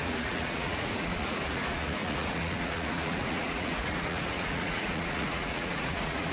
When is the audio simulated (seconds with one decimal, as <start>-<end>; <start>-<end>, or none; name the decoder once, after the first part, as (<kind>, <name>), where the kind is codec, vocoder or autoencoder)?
0.0-6.3 (vocoder, Vocos)